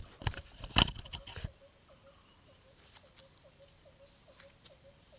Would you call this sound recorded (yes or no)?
yes